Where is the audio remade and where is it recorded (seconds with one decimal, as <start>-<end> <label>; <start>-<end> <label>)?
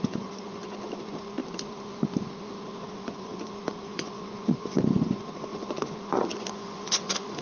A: 0.0-1.4 remade; 1.4-2.8 recorded; 2.8-7.4 remade